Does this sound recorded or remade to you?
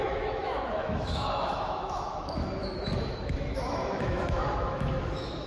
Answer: remade